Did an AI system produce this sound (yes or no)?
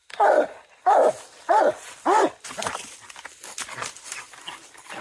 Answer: no